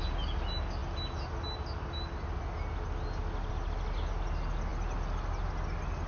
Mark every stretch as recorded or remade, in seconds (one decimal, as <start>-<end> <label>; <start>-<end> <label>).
0.0-6.1 recorded